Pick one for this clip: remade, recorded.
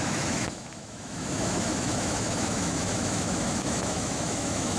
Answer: remade